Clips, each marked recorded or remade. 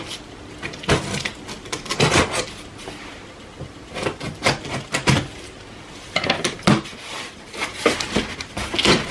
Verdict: recorded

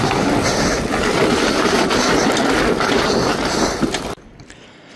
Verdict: recorded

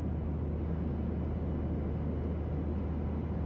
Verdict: recorded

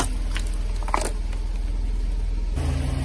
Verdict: recorded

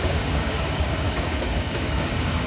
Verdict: remade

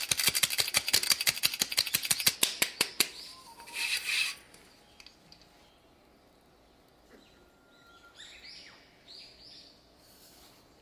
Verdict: recorded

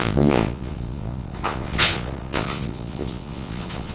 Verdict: remade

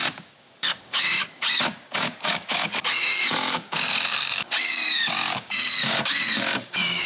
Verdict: remade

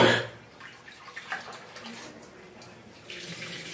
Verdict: recorded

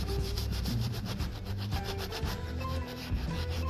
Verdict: remade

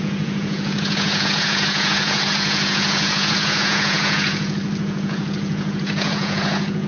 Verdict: remade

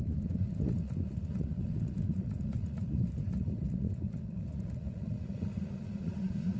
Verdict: remade